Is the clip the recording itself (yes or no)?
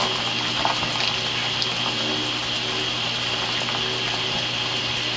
yes